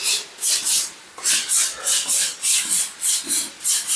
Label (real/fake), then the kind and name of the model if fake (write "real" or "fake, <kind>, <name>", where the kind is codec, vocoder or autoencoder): real